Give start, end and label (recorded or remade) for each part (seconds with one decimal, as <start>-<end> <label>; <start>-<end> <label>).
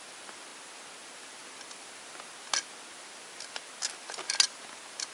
0.0-5.1 recorded